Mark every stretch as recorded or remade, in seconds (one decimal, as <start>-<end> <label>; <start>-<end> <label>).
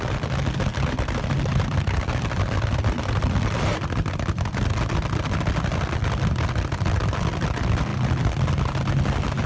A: 0.0-9.5 recorded